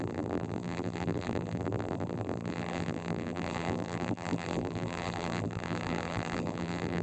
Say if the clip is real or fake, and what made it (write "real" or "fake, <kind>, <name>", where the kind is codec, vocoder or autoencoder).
fake, vocoder, BigVGAN v2